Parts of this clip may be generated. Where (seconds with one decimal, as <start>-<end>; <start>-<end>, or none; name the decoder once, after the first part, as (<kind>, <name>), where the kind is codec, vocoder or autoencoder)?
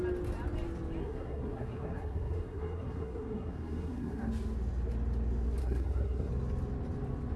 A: 1.0-4.3 (codec, SNAC); 5.6-6.3